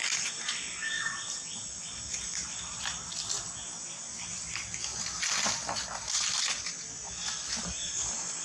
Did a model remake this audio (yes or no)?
no